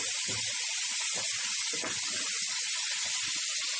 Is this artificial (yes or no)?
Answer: no